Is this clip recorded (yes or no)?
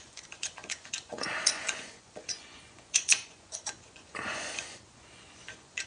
no